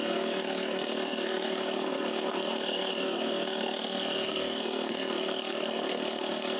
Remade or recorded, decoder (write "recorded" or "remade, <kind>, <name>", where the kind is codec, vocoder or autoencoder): remade, codec, SNAC